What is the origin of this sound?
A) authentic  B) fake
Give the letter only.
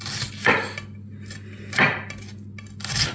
A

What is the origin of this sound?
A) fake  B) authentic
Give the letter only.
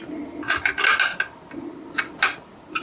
B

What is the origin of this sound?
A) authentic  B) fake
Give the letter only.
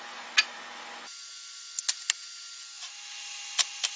A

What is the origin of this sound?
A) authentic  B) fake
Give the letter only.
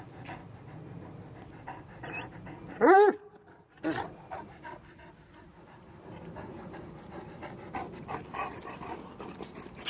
A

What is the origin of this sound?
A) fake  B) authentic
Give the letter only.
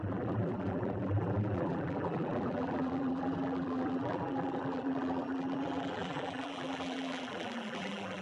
A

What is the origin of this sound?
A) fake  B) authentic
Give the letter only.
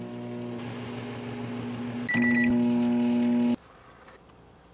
B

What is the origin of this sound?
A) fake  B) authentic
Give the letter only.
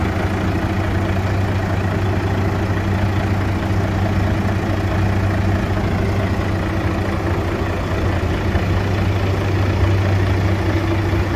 B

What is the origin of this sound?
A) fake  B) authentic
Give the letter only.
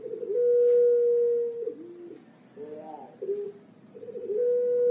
B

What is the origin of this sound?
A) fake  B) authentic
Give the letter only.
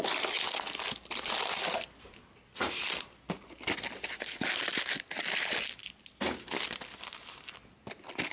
B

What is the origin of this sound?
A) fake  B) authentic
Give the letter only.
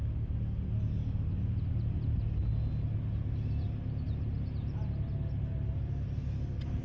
B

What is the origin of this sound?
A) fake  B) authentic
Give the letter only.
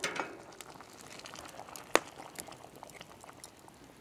B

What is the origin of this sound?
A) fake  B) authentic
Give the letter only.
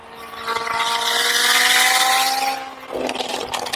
B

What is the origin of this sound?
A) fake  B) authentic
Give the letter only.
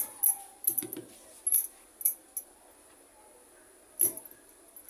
B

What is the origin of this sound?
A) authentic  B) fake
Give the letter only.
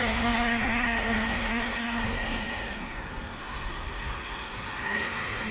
B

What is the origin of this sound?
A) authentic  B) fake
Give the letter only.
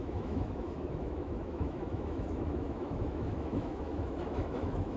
B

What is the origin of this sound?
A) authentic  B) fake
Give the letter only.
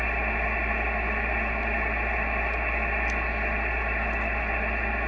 A